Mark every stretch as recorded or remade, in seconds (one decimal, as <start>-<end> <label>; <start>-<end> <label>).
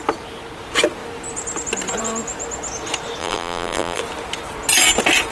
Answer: 0.0-3.2 recorded; 3.2-4.0 remade; 4.0-5.3 recorded